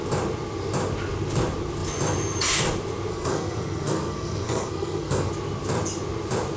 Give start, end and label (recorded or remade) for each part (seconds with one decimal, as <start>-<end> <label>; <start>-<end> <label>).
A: 0.0-3.1 recorded; 3.1-5.3 remade; 5.3-6.6 recorded